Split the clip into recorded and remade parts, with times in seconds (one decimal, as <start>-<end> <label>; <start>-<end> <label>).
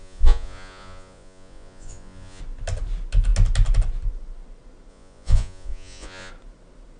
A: 0.0-2.4 remade; 2.4-4.9 recorded; 4.9-6.3 remade; 6.3-7.0 recorded